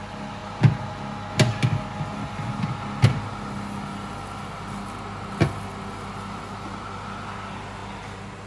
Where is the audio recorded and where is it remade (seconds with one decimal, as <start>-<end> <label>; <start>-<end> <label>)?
0.0-8.5 recorded